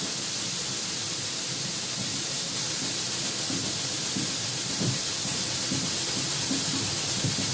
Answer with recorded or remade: recorded